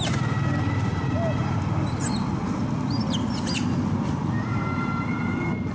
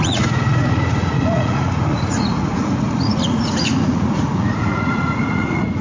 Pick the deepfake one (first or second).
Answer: second